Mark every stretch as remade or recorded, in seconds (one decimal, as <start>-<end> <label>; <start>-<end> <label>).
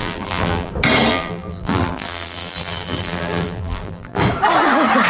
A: 0.0-0.7 remade; 0.7-1.1 recorded; 1.1-4.2 remade; 4.2-5.1 recorded